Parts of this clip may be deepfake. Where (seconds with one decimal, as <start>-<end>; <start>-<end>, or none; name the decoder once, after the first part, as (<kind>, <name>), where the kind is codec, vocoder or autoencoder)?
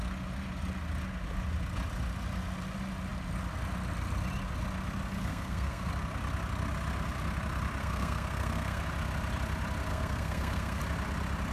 5.3-5.9 (codec, SNAC); 7.8-8.8; 9.9-10.8